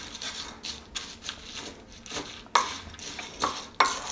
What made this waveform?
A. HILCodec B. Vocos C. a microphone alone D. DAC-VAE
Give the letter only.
C